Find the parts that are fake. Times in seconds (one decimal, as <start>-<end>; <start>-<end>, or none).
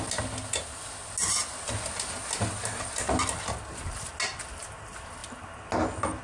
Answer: none